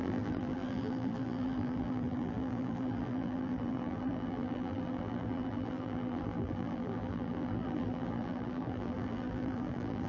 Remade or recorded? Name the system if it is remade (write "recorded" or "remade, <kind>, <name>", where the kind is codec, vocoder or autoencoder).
remade, vocoder, BigVGAN v2